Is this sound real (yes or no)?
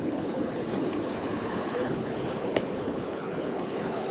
no